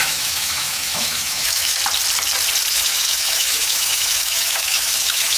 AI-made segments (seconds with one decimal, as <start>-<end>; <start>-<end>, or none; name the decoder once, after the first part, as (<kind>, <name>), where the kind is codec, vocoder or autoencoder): 0.0-1.8 (autoencoder, DAC-VAE); 2.7-5.4